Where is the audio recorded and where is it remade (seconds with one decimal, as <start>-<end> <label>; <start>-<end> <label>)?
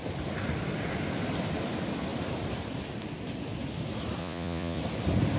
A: 0.0-4.2 recorded; 4.2-4.8 remade; 4.8-5.4 recorded